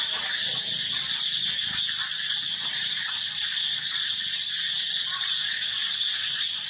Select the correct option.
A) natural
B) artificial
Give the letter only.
A